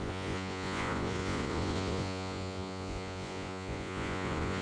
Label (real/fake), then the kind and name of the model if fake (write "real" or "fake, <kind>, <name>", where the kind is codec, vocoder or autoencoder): fake, vocoder, Vocos